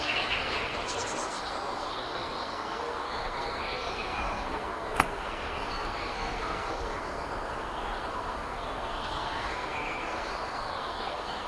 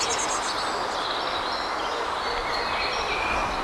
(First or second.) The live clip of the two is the second